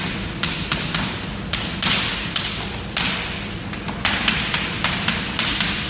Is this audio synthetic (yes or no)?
no